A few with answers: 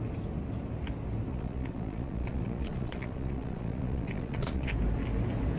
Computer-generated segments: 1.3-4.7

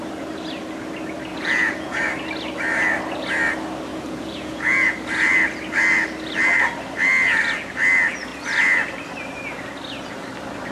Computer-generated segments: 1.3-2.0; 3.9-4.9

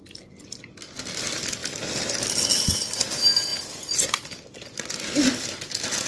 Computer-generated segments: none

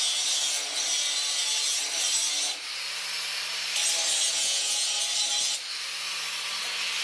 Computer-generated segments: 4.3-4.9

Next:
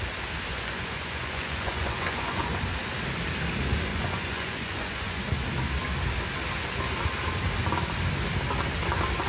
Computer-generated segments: 0.5-2.6; 3.9-5.2

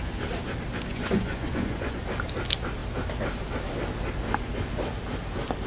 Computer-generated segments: 0.9-2.0

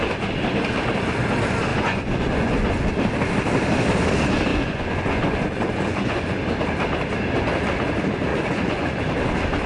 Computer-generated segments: 1.7-2.9; 4.5-6.4; 8.3-8.9

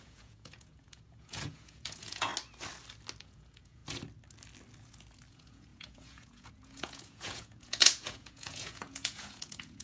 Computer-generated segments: 0.0-2.3; 3.2-3.8; 5.3-9.8